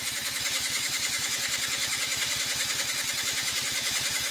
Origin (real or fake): fake